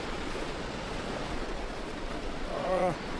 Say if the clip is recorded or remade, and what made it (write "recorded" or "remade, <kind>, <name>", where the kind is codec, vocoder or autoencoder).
remade, vocoder, Vocos